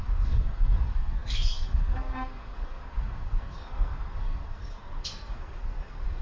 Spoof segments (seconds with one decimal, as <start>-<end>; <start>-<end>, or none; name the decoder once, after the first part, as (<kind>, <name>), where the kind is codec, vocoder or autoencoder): 0.0-6.2 (codec, SNAC)